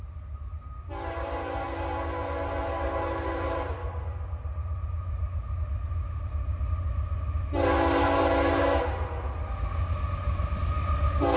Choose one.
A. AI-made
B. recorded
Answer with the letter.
B